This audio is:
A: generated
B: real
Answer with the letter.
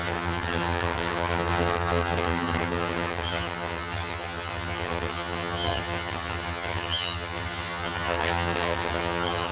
A